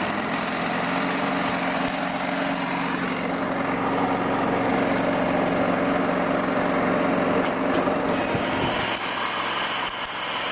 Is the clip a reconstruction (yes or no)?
no